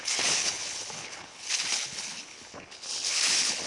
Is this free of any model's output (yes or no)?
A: no